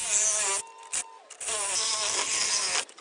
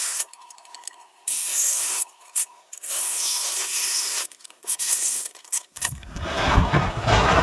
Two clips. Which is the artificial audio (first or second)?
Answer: second